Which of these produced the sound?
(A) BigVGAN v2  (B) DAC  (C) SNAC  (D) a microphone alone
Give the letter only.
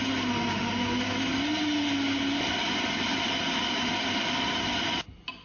D